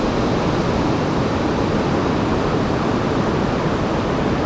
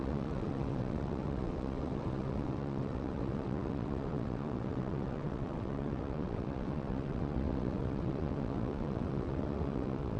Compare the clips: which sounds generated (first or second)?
second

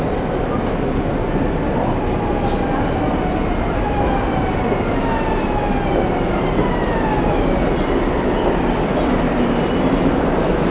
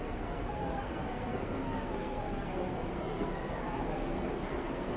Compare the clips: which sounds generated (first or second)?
second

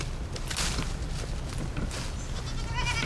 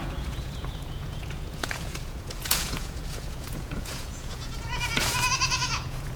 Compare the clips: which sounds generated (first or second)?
second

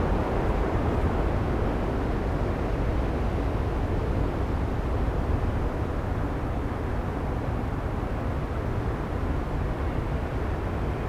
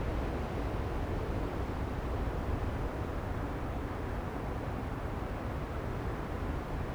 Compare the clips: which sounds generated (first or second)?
second